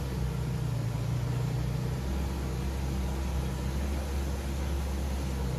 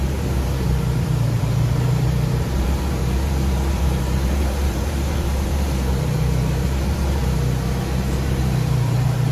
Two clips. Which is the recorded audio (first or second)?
first